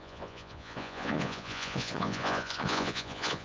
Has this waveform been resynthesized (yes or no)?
yes